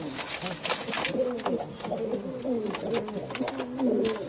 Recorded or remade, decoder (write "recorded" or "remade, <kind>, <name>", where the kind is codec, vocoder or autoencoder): recorded